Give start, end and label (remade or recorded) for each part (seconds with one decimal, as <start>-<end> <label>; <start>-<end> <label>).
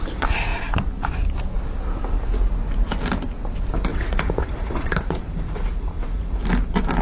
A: 0.0-3.9 recorded; 3.9-6.4 remade; 6.4-7.0 recorded